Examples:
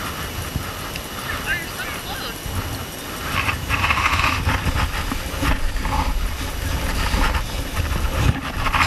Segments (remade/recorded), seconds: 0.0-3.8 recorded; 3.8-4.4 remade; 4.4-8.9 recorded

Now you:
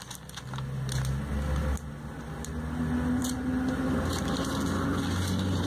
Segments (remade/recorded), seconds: 0.0-5.7 recorded

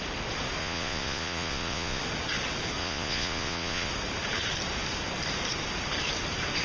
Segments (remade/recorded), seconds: 0.0-0.6 recorded; 0.6-2.0 remade; 2.0-2.8 recorded; 2.8-3.9 remade; 3.9-6.6 recorded

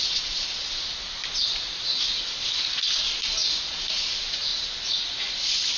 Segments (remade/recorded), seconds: 0.0-5.8 remade

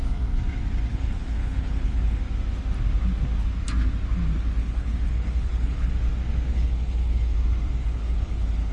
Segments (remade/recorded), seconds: 0.0-0.9 recorded; 0.9-2.2 remade; 2.2-4.6 recorded; 4.6-5.9 remade; 5.9-6.5 recorded; 6.5-7.2 remade; 7.2-7.8 recorded; 7.8-8.7 remade

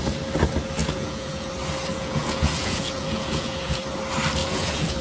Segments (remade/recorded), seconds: 0.0-0.8 recorded; 0.8-1.5 remade; 1.5-1.9 recorded; 1.9-3.8 remade; 3.8-4.4 recorded; 4.4-5.0 remade